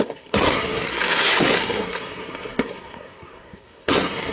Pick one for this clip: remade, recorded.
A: remade